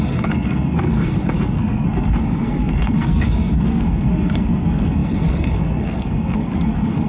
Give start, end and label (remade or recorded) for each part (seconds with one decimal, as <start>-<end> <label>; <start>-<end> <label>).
0.0-7.1 remade